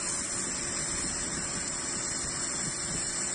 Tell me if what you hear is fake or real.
real